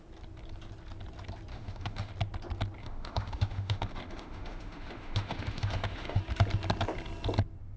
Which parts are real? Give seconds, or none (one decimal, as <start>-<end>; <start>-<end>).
0.0-1.5; 2.1-2.8; 6.2-7.8